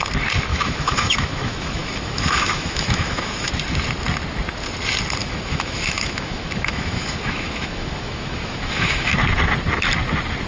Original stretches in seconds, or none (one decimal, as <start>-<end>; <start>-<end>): 0.0-0.5; 3.5-5.2; 9.1-10.5